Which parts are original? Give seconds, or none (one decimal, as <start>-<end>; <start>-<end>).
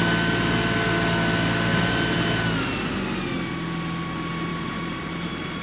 0.0-1.7; 2.3-4.5